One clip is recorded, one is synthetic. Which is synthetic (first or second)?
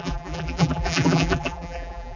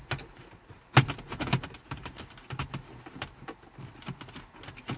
first